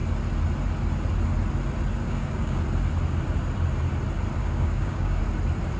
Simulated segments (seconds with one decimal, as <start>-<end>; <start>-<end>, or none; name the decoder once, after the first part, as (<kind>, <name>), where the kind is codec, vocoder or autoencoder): 2.0-2.6 (codec, DAC); 4.4-5.2